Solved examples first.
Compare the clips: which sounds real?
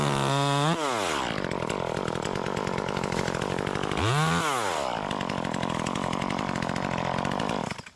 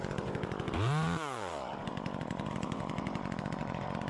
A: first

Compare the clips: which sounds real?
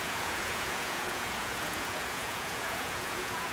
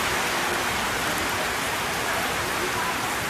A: second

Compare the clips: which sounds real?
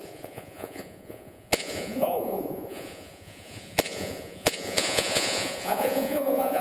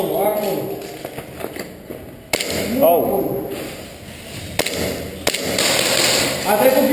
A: second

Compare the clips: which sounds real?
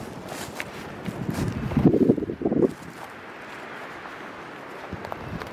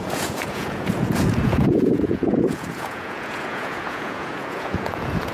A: first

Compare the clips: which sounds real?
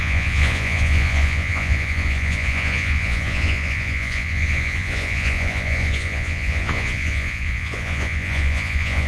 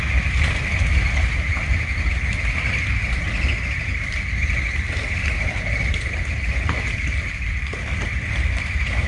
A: second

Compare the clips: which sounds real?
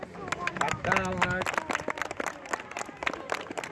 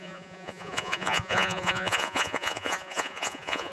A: first